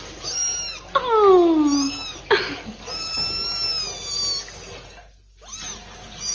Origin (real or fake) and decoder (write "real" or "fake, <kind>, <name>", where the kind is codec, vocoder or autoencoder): real